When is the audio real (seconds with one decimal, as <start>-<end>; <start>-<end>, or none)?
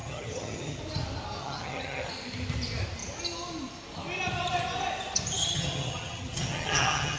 0.8-1.4; 2.1-5.4